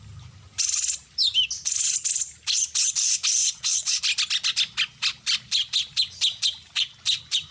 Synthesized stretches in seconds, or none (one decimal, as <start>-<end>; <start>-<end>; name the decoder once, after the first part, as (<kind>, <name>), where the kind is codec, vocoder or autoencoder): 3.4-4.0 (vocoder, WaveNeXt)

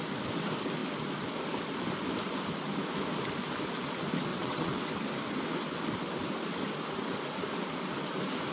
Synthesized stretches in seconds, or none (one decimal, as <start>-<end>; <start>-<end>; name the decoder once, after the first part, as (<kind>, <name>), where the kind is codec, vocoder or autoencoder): 4.3-4.9 (vocoder, WaveNeXt)

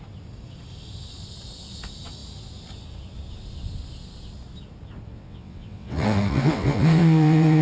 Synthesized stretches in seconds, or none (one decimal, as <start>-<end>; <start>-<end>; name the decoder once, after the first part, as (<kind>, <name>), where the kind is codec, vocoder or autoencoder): 5.1-7.6 (vocoder, WaveNeXt)